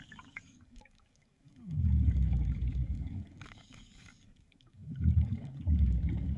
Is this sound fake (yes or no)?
yes